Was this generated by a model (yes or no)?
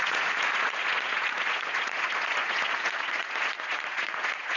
yes